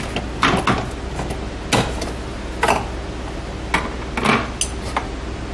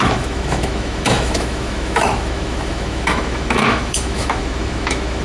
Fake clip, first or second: second